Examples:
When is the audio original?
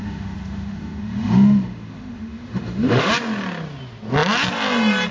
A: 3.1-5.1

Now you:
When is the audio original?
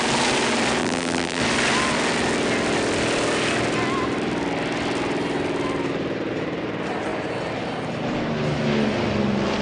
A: 0.0-0.8; 1.4-9.6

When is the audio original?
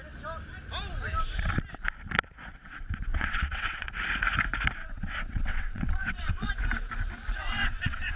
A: 0.0-3.1; 3.9-4.8; 6.5-7.4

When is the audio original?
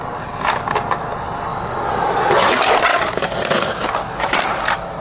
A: 0.0-1.5; 2.0-2.9; 3.8-5.0